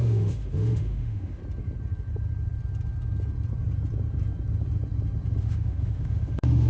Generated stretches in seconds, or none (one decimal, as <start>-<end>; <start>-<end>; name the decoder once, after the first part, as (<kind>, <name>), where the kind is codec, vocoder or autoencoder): 0.0-1.4 (autoencoder, DAC-VAE); 5.4-6.7